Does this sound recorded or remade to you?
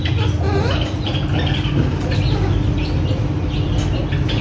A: recorded